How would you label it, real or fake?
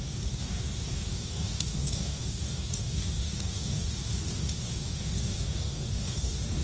fake